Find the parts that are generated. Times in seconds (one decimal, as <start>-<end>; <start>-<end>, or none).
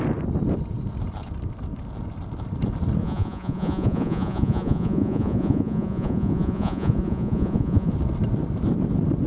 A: 3.0-7.9